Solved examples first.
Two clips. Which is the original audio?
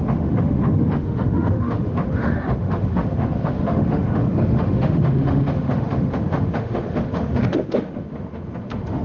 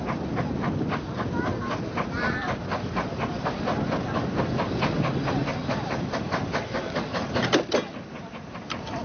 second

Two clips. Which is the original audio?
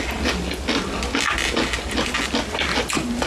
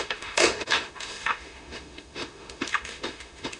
first